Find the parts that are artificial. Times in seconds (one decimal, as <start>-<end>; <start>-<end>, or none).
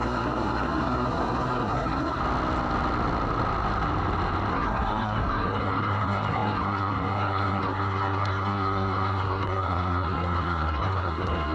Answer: 0.0-2.2; 4.5-11.5